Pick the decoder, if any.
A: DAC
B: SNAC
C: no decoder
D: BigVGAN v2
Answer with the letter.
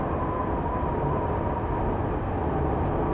C